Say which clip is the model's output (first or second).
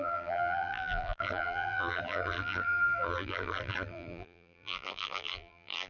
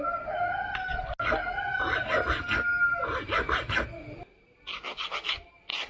first